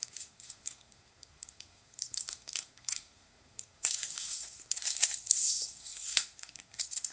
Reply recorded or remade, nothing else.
remade